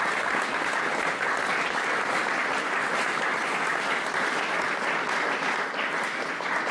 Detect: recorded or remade recorded